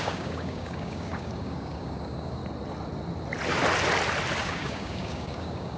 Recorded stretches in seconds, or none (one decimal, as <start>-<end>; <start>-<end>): 2.4-4.4